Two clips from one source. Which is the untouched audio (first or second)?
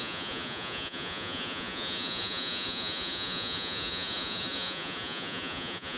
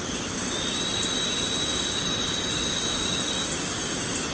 second